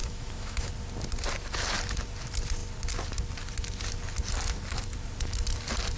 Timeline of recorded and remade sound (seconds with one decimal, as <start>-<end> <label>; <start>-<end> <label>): 0.0-0.7 remade; 0.7-6.0 recorded